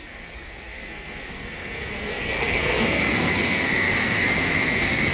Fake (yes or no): yes